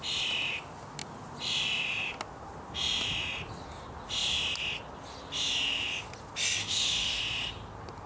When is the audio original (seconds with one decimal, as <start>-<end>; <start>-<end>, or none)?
0.0-6.6; 7.2-8.1